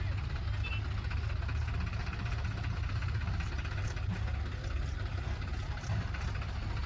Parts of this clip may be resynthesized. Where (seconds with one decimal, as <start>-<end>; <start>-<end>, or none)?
2.0-3.5